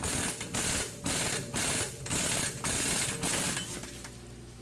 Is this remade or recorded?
recorded